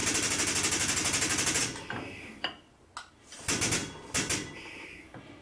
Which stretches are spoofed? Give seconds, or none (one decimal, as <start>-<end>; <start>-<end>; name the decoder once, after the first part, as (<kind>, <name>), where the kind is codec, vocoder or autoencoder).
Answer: none